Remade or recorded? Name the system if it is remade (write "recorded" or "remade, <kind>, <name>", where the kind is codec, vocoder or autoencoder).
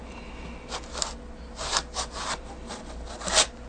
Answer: recorded